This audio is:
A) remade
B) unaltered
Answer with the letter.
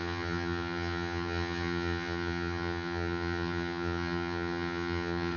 A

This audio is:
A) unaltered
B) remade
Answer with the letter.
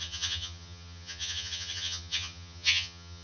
B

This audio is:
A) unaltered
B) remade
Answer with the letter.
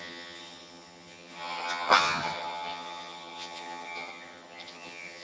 B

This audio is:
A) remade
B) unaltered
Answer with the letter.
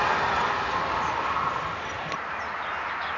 B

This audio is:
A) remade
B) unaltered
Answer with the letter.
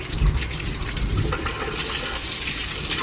B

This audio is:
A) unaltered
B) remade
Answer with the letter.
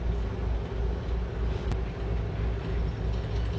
A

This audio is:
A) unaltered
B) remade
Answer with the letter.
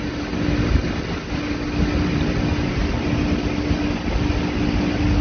A